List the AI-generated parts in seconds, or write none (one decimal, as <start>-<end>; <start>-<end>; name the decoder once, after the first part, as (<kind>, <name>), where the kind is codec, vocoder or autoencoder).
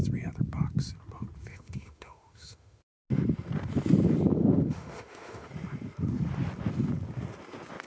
1.5-2.8 (autoencoder, DAC-VAE); 4.4-5.5